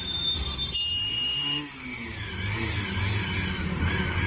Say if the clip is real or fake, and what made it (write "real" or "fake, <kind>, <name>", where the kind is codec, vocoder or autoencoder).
fake, vocoder, BigVGAN v2